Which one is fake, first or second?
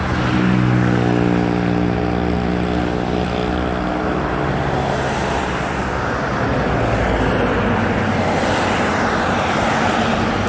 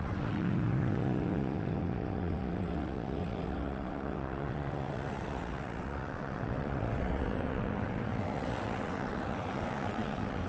second